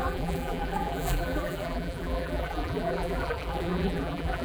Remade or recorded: remade